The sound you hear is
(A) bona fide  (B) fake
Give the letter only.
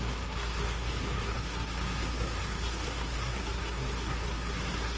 B